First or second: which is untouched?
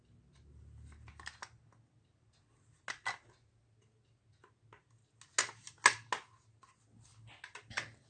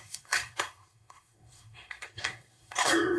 first